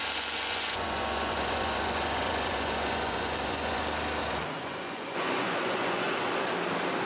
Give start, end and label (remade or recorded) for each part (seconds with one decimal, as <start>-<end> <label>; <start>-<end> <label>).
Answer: 0.0-3.8 remade; 3.8-4.2 recorded; 4.2-6.1 remade; 6.1-7.1 recorded